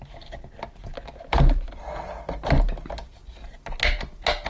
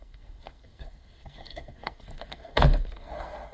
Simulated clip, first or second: second